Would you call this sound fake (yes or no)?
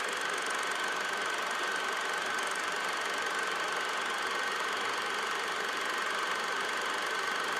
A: no